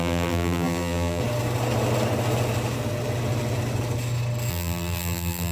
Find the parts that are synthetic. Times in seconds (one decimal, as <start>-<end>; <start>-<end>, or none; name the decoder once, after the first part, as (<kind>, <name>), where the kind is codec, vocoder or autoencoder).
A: 0.0-1.2 (vocoder, BigVGAN v2); 4.5-5.5